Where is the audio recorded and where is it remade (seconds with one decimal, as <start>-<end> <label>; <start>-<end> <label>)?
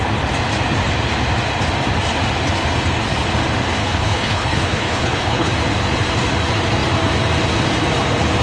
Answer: 0.0-3.8 recorded; 3.8-5.5 remade; 5.5-8.4 recorded